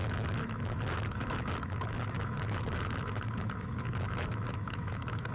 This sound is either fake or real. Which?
fake